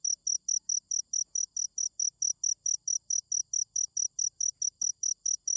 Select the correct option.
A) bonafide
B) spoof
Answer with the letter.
A